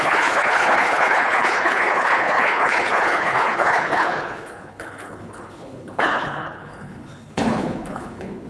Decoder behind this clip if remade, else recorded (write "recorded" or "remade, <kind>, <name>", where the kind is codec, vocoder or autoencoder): remade, codec, HILCodec